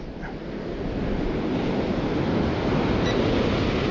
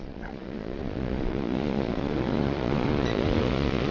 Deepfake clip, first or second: second